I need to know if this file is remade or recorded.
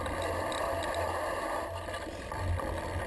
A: recorded